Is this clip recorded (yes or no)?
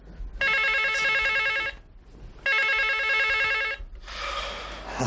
yes